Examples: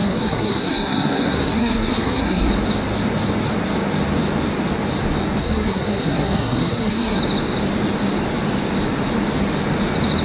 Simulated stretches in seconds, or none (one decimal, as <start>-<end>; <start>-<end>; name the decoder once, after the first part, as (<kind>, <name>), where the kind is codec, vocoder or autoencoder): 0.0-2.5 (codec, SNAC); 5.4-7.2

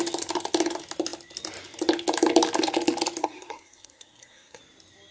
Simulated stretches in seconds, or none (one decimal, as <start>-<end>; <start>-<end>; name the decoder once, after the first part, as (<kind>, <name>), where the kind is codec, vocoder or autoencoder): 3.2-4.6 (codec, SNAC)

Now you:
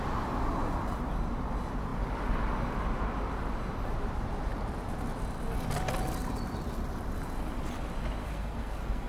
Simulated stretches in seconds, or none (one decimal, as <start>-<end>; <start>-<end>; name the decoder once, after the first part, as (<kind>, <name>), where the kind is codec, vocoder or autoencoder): 8.2-9.1 (codec, SNAC)